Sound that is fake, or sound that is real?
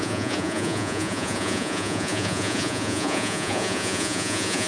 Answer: fake